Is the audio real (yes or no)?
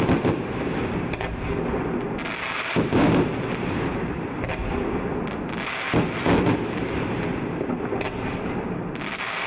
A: yes